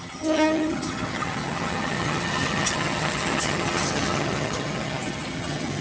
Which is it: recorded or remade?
remade